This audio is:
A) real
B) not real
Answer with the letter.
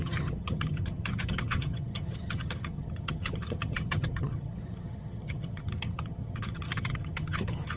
B